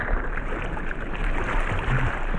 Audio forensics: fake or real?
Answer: real